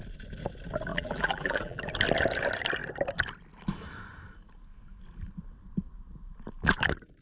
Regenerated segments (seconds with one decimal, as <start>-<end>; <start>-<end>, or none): 0.9-1.8